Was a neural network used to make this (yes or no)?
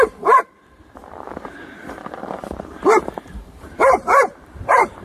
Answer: yes